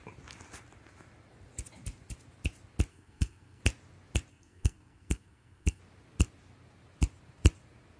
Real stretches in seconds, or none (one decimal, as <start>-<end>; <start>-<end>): 0.0-2.9; 3.6-4.3; 5.8-8.0